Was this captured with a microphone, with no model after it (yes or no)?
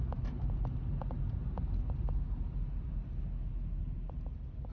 yes